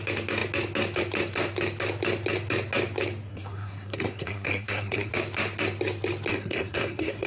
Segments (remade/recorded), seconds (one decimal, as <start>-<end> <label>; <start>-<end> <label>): 0.0-3.3 recorded; 3.3-5.1 remade; 5.1-6.3 recorded; 6.3-7.3 remade